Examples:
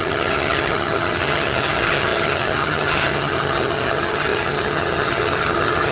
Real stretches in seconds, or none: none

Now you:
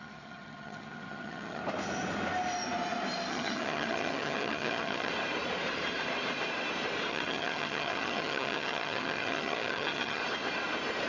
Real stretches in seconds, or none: 1.6-3.3; 5.1-7.1; 10.2-11.1

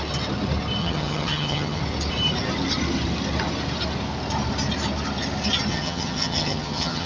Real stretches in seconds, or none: 0.0-0.8; 1.8-5.7

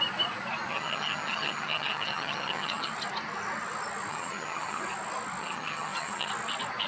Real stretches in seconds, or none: 0.0-0.7; 2.9-4.1; 4.8-5.4; 6.3-6.9

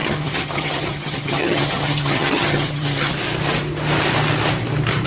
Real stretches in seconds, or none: 3.1-5.1

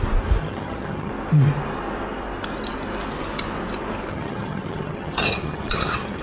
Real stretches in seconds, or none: 0.0-0.4; 1.1-4.1